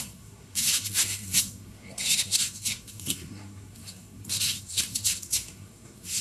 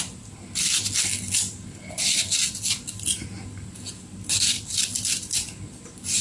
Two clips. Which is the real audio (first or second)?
second